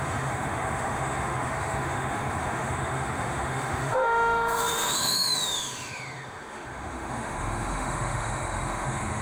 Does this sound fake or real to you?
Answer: fake